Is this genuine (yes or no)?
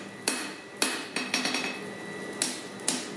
yes